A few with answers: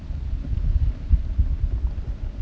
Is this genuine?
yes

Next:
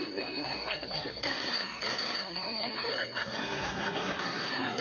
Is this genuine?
no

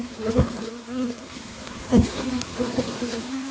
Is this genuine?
no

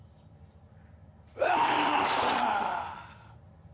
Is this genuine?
yes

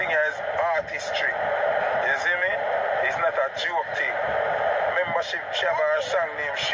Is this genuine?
yes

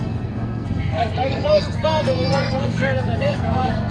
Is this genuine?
no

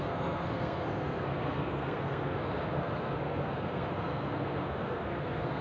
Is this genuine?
no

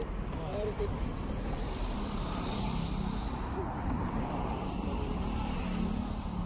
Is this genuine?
yes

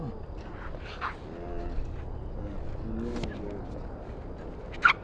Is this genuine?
yes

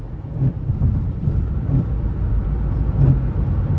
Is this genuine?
yes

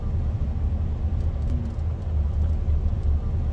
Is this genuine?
yes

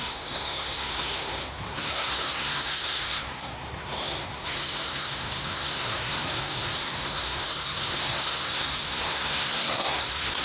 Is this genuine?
no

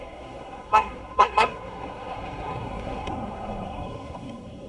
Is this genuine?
no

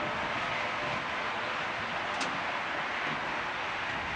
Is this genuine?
yes